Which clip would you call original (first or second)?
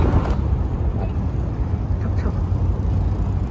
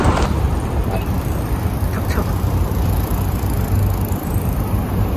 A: first